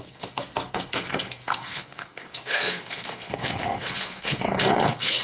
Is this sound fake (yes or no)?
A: yes